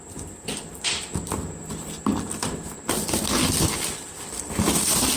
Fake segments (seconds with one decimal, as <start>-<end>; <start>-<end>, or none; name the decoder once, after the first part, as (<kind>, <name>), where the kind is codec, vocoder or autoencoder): none